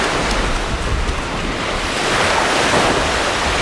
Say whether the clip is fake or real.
real